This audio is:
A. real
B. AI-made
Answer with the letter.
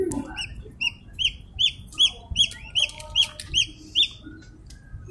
A